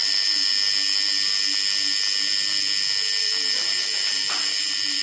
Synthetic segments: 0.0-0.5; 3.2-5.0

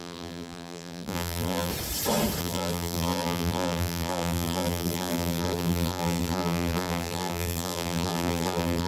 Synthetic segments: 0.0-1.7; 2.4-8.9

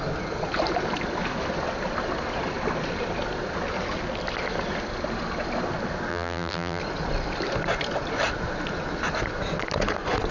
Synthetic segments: 6.1-6.8

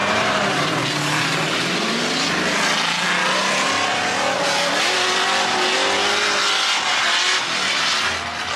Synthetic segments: 0.0-0.8

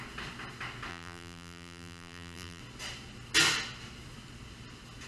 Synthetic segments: 0.9-2.6

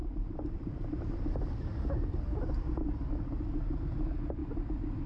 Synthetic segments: 0.0-3.1; 4.4-5.1

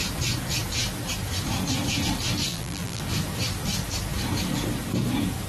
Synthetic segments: 2.5-3.0